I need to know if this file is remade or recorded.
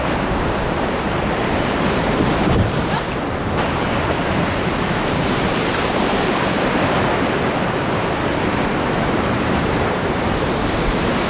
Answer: remade